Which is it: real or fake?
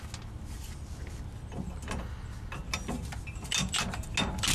real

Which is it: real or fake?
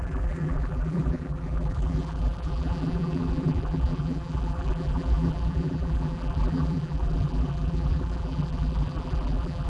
fake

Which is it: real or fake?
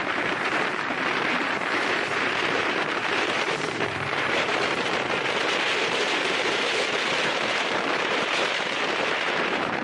fake